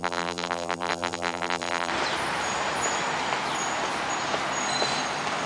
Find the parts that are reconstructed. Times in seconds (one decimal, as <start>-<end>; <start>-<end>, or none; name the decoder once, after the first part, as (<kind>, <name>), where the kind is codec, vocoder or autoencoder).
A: 0.0-1.9 (vocoder, BigVGAN v2)